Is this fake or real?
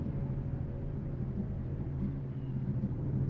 fake